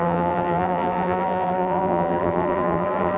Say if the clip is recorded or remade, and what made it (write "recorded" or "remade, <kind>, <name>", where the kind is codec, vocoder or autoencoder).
remade, vocoder, BigVGAN v2